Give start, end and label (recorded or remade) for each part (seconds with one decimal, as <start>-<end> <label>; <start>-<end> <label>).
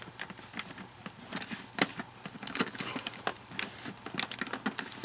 0.0-2.4 recorded; 2.4-3.2 remade; 3.2-5.0 recorded